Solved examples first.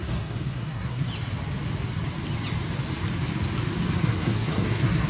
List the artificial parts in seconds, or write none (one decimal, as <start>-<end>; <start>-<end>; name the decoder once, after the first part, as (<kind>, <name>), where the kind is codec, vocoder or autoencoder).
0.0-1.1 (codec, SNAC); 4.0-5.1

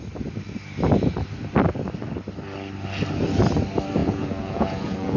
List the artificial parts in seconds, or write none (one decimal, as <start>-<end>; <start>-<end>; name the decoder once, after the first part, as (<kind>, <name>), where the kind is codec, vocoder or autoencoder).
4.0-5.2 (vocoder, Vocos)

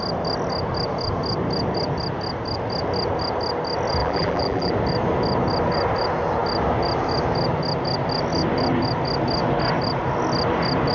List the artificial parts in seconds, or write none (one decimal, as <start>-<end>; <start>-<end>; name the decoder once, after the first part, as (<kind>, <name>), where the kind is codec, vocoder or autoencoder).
4.0-4.7 (vocoder, BigVGAN v2)

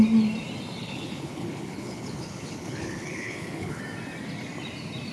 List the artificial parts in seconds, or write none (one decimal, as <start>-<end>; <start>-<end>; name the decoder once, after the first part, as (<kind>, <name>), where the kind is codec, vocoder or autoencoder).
0.8-3.8 (codec, HILCodec)